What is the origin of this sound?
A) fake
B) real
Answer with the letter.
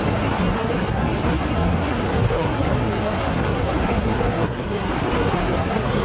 A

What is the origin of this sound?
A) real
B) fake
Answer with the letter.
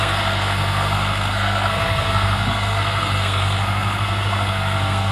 B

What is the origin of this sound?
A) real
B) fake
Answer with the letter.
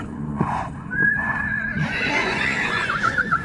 B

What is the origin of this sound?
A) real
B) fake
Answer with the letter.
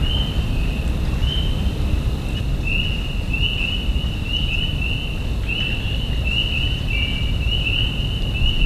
A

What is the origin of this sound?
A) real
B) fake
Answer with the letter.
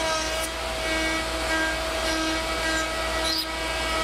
A